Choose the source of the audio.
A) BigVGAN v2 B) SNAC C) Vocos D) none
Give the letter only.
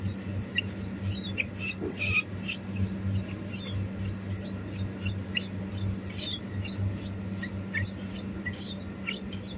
D